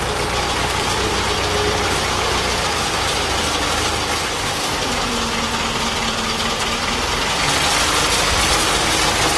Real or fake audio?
real